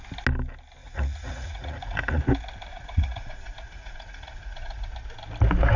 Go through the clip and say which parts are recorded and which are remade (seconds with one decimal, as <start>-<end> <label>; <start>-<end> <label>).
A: 0.0-0.8 recorded; 0.8-2.2 remade; 2.2-2.7 recorded; 2.7-4.9 remade; 4.9-5.8 recorded